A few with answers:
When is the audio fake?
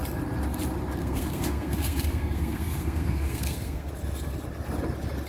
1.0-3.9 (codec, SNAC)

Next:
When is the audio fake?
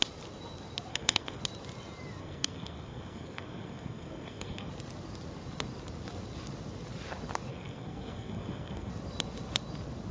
0.9-1.4 (codec, SNAC); 2.2-4.7; 7.5-8.9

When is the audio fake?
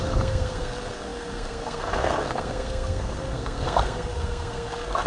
0.0-5.1 (codec, SNAC)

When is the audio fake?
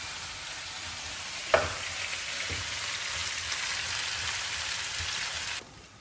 none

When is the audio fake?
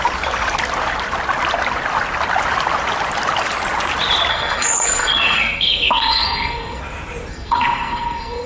4.3-6.8 (codec, SNAC); 7.3-8.5